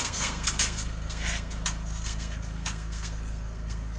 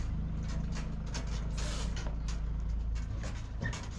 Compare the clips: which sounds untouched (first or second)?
second